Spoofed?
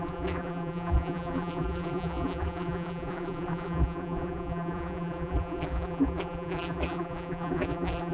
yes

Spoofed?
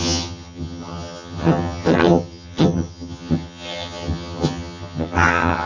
yes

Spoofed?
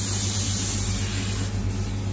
no